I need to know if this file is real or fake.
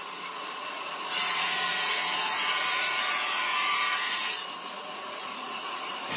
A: fake